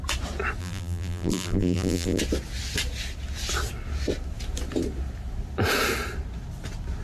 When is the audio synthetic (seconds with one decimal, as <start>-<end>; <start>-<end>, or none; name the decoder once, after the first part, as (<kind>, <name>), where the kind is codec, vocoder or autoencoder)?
0.6-2.2 (vocoder, BigVGAN v2)